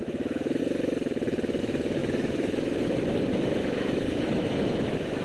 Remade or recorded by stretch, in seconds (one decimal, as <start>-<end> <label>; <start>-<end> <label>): 0.0-0.6 remade; 0.6-1.6 recorded; 1.6-5.2 remade